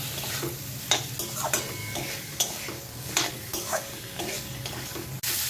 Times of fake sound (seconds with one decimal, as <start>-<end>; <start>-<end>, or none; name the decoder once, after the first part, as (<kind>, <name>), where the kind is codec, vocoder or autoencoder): 1.8-5.1 (codec, DAC)